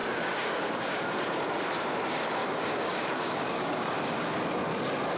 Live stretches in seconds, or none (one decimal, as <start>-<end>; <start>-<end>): 1.0-2.4; 4.2-5.2